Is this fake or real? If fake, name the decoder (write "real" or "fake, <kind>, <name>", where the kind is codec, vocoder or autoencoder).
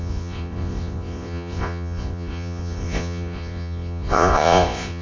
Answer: fake, vocoder, Vocos